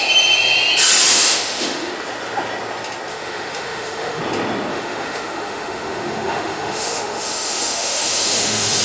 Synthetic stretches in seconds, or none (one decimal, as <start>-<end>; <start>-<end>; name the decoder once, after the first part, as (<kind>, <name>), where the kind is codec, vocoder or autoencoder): 1.1-1.9 (autoencoder, DAC-VAE); 3.1-4.2; 4.7-8.8